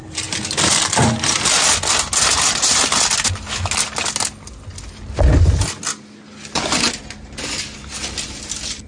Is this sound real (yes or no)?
yes